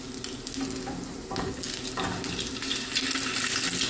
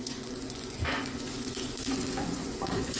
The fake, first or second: second